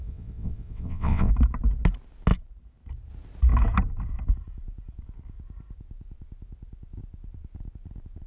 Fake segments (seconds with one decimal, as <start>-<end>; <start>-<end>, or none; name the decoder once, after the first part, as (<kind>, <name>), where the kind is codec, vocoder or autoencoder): 0.0-1.3 (vocoder, WaveNeXt)